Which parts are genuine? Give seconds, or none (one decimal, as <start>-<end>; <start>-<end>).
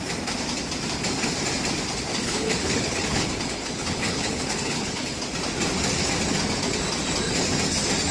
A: 0.0-2.1; 5.2-8.1